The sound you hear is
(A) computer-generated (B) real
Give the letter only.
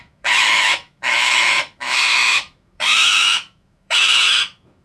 A